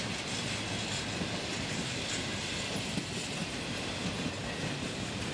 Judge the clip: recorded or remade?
recorded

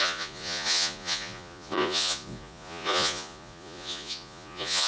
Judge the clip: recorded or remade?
remade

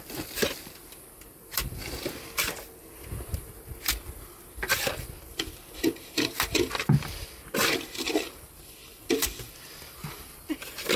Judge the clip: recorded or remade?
remade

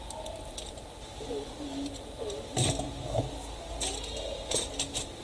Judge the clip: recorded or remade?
recorded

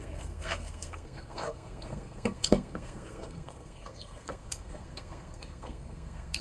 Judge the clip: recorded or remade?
remade